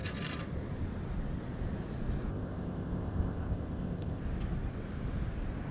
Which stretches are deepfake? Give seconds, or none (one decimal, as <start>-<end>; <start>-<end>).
2.3-4.2